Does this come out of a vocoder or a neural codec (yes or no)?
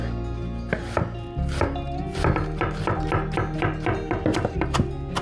no